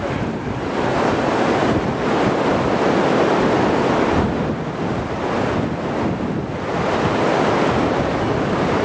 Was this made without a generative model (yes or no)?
yes